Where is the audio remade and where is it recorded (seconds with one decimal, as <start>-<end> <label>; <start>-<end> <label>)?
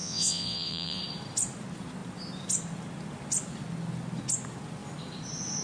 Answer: 0.0-1.0 remade; 1.0-5.6 recorded